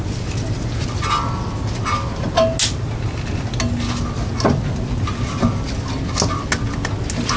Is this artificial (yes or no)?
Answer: no